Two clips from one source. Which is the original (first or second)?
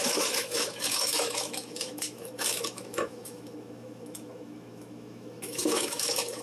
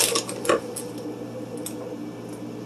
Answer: second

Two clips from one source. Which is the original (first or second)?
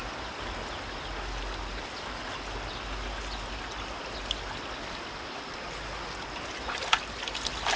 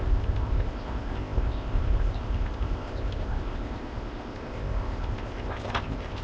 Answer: first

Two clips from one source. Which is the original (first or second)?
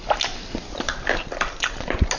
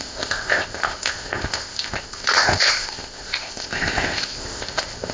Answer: first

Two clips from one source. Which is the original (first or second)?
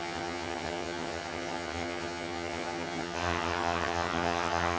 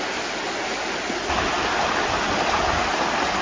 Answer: second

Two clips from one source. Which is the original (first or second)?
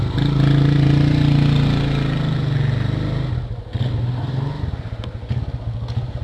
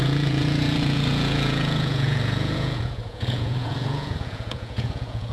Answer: first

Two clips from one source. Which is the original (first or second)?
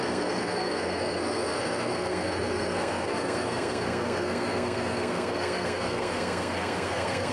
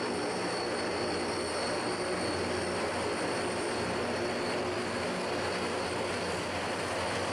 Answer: second